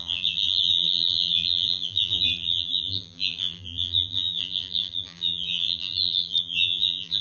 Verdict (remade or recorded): remade